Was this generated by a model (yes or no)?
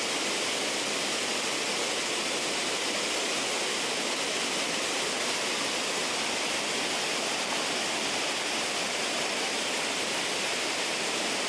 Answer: no